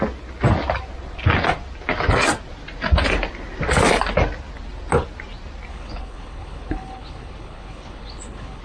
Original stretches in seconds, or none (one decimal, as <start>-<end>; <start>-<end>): 0.0-5.7